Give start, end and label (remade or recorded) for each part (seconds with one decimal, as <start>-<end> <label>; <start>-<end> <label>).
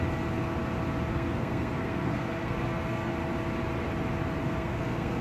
0.0-1.1 recorded; 1.1-3.1 remade; 3.1-4.4 recorded; 4.4-5.2 remade